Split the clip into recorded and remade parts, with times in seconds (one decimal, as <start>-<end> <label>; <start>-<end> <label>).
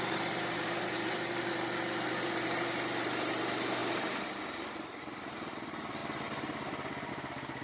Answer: 0.0-6.0 remade; 6.0-7.1 recorded; 7.1-7.6 remade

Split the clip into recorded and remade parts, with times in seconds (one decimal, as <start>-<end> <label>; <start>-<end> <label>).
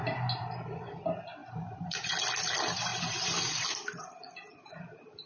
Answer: 0.0-1.4 recorded; 1.4-2.1 remade; 2.1-5.3 recorded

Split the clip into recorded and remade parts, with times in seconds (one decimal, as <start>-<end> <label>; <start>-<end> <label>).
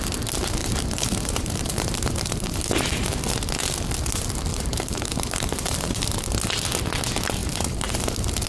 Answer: 0.0-0.6 recorded; 0.6-3.2 remade; 3.2-4.5 recorded; 4.5-6.0 remade; 6.0-7.4 recorded; 7.4-8.0 remade; 8.0-8.5 recorded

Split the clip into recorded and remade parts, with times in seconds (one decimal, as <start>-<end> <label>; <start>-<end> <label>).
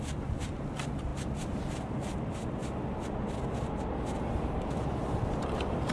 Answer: 0.0-1.1 remade; 1.1-4.6 recorded; 4.6-5.9 remade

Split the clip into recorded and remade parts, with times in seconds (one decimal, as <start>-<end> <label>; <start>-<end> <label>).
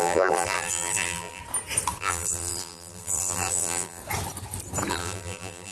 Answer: 0.0-1.4 remade; 1.4-2.0 recorded; 2.0-4.0 remade; 4.0-4.9 recorded; 4.9-5.7 remade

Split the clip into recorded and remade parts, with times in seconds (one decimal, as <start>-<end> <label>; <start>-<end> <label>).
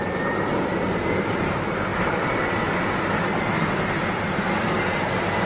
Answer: 0.0-0.5 remade; 0.5-1.2 recorded; 1.2-5.5 remade